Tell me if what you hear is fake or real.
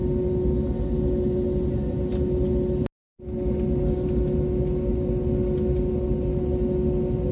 real